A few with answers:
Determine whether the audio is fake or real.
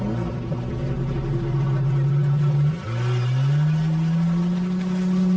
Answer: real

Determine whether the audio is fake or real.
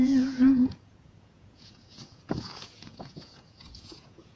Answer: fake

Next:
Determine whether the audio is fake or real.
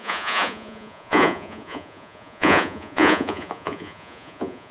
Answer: fake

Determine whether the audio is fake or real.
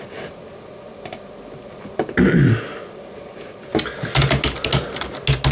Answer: real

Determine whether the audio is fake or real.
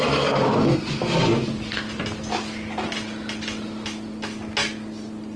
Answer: real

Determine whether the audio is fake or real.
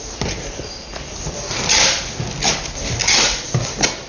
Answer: real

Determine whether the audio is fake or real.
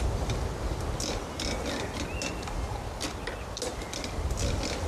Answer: real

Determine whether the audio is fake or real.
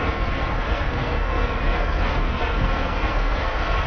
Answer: fake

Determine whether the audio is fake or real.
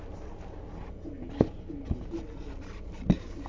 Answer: real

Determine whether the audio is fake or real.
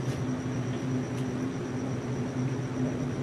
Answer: real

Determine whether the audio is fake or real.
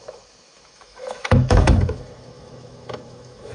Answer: fake